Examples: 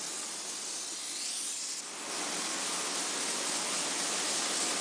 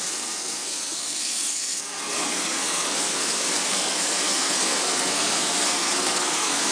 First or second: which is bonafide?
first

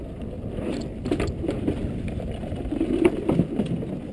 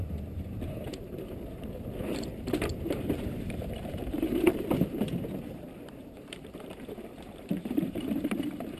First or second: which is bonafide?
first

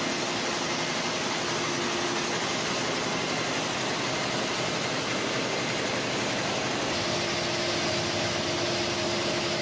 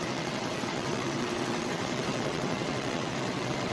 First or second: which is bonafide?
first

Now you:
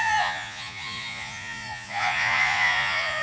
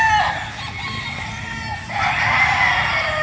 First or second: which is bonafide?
second